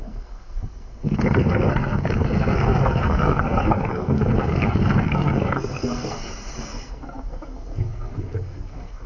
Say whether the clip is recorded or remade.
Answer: remade